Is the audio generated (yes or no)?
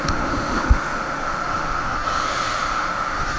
yes